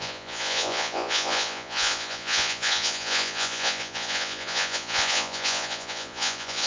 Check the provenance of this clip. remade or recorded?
remade